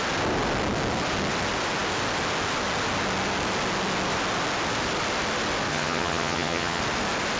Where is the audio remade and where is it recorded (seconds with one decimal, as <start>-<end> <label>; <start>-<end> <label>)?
0.0-5.7 recorded; 5.7-6.8 remade; 6.8-7.4 recorded

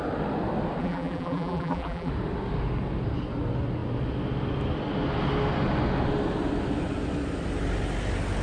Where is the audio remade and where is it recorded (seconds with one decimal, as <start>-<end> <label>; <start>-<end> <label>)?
0.0-0.8 recorded; 0.8-2.1 remade; 2.1-8.4 recorded